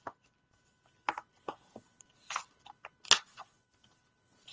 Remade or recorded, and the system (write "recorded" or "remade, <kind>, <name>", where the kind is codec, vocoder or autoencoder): recorded